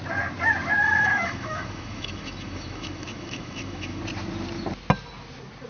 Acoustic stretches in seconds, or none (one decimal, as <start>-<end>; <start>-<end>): 0.0-0.8; 4.0-5.7